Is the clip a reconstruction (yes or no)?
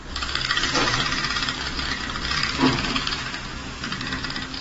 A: no